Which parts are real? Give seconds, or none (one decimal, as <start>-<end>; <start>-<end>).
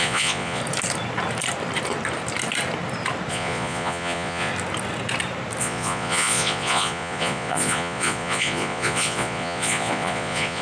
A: 0.6-3.3; 4.5-5.6